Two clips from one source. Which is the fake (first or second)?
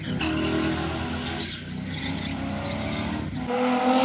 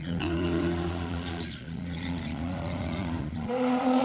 second